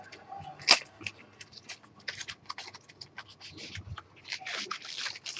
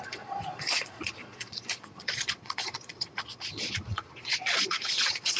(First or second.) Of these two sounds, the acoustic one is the first